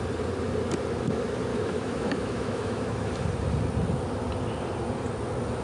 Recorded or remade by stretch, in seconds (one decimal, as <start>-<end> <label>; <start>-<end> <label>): 0.0-1.5 recorded; 1.5-3.1 remade; 3.1-5.6 recorded